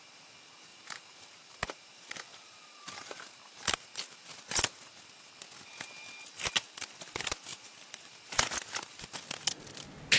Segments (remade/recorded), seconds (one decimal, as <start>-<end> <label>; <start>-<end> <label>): 0.0-0.7 recorded; 0.7-1.9 remade; 1.9-2.3 recorded; 2.3-5.3 remade; 5.3-7.5 recorded; 7.5-8.4 remade; 8.4-10.2 recorded